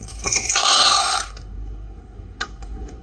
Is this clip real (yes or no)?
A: no